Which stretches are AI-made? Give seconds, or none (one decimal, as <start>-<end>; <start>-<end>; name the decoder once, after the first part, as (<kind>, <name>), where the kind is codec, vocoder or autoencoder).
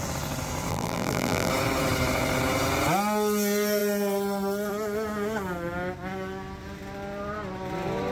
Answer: 0.7-1.5 (vocoder, BigVGAN v2)